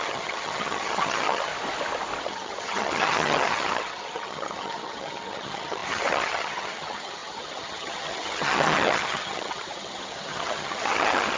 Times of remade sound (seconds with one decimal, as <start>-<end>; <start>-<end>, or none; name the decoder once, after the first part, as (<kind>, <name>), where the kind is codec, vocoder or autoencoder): 0.0-1.5 (vocoder, HiFi-GAN); 2.2-11.4